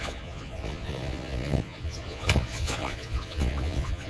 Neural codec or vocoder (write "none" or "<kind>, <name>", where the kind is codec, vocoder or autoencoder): vocoder, Vocos